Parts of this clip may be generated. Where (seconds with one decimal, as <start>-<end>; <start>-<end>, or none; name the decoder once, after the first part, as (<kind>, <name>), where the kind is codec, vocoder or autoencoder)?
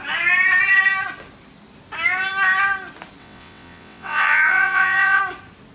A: 3.2-5.2 (vocoder, WaveNeXt)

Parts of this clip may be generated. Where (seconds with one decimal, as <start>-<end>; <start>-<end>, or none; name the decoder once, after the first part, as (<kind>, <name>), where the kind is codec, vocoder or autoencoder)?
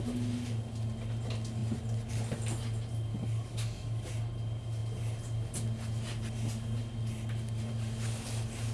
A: 3.1-4.1 (codec, DAC)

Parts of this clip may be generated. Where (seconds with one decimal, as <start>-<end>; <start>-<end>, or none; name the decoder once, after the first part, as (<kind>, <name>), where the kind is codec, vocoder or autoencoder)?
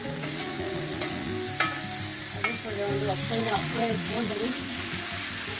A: 0.0-1.3 (vocoder, Vocos); 3.4-5.6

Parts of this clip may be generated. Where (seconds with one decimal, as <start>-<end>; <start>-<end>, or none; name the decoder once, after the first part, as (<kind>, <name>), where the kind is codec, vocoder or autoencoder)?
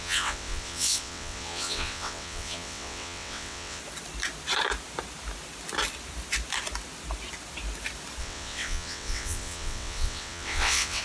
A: 0.0-3.8 (vocoder, WaveNeXt); 8.2-11.0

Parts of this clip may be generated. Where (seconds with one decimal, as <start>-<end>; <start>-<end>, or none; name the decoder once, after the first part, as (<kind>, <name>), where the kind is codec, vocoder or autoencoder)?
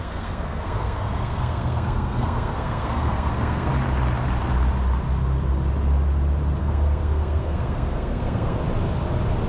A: 0.0-3.7 (codec, SNAC); 6.6-8.6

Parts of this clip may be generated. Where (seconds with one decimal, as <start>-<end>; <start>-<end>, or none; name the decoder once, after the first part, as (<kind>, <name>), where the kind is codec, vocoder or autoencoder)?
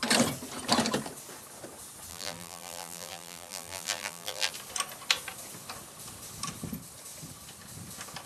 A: 2.1-4.5 (vocoder, BigVGAN v2)